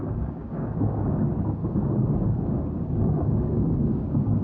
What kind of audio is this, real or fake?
fake